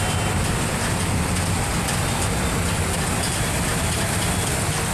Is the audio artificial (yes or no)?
no